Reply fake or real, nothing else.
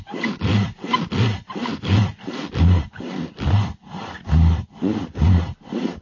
real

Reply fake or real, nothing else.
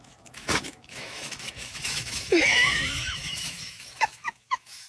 fake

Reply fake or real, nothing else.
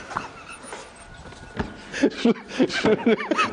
real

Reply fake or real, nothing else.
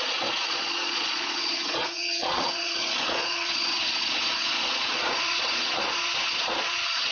fake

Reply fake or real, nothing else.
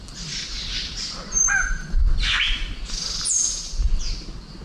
real